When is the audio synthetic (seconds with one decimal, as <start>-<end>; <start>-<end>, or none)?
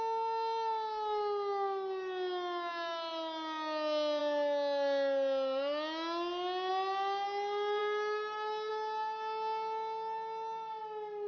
none